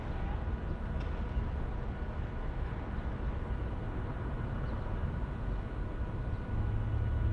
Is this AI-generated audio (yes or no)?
no